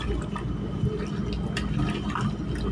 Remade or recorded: recorded